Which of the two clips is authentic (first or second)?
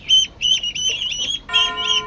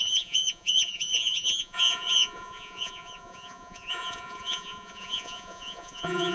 first